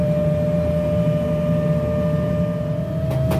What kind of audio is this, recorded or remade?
recorded